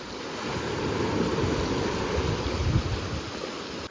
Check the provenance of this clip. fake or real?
real